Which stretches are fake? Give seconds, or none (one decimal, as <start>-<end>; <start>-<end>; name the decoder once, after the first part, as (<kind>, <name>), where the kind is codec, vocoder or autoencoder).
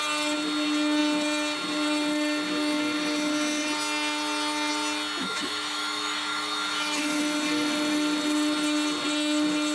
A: 5.2-7.2 (autoencoder, DAC-VAE)